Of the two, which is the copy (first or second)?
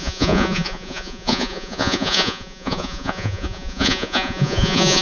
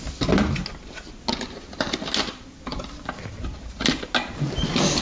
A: first